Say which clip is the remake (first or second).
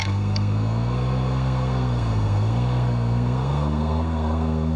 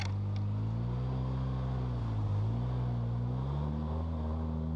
first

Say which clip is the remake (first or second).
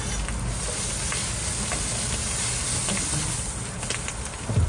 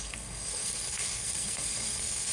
second